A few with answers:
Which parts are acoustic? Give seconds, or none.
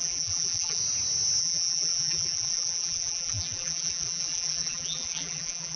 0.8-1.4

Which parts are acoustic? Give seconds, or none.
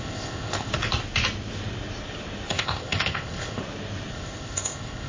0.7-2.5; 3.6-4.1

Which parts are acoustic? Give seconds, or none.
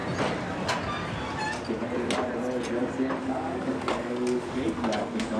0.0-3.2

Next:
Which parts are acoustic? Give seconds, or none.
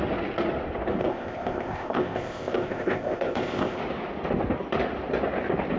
0.0-1.0; 3.8-5.8